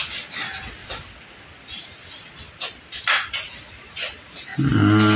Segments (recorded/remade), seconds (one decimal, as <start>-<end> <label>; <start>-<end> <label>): 0.0-5.2 recorded